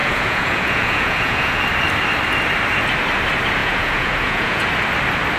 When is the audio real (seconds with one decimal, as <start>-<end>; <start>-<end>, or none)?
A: 1.6-3.6; 4.7-5.4